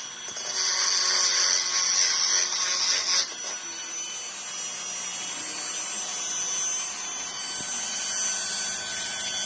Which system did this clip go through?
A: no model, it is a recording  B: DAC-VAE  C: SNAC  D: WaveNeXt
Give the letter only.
A